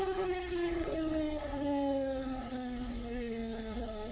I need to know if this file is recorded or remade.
remade